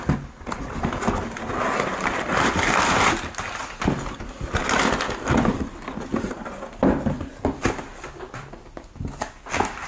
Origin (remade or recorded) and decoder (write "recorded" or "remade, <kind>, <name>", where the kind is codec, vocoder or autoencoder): recorded